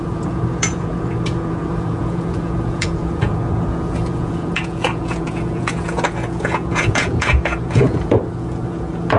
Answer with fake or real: fake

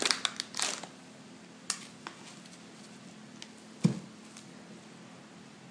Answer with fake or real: real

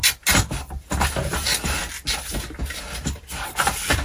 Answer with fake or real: real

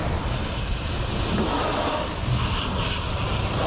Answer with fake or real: real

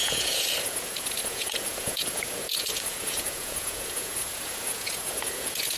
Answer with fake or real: fake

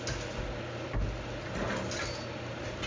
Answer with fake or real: real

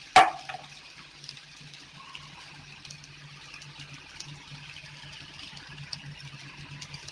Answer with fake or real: real